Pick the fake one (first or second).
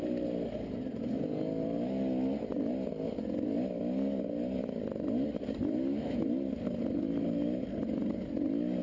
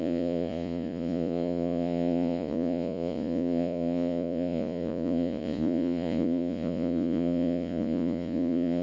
second